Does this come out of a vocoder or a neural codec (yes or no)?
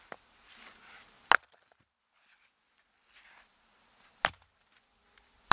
no